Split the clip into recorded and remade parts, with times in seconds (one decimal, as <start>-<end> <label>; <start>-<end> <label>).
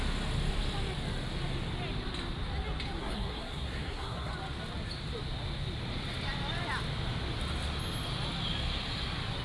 0.0-3.0 recorded; 3.0-4.3 remade; 4.3-9.4 recorded